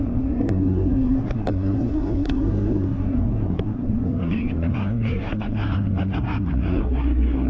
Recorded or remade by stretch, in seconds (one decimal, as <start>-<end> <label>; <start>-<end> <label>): 0.0-7.5 remade